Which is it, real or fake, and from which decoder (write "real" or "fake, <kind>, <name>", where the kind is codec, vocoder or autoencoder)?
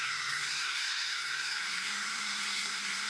fake, codec, SNAC